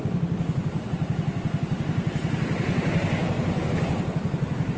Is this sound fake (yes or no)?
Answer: no